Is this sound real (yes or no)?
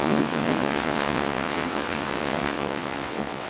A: no